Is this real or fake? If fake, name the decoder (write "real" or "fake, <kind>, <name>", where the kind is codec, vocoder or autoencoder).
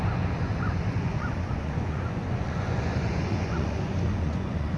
fake, vocoder, Vocos